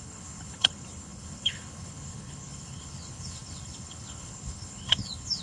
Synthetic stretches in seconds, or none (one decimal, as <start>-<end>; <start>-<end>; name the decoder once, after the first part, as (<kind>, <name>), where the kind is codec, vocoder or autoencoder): 0.0-5.4 (codec, HILCodec)